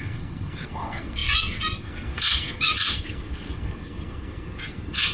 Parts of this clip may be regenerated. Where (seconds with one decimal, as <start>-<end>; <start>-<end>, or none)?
0.0-5.1